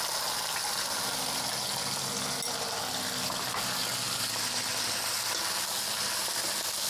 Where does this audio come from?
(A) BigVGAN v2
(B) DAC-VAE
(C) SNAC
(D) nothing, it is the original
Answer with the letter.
D